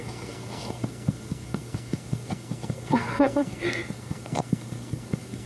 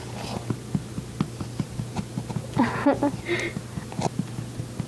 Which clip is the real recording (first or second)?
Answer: second